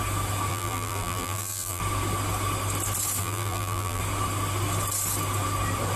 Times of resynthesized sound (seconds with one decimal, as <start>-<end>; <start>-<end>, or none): 0.5-1.8; 3.2-4.0